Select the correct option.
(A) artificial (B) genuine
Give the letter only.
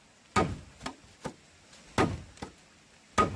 B